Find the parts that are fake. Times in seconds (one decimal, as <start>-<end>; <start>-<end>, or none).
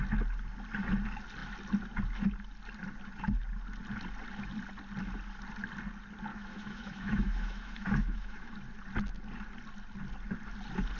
6.3-8.5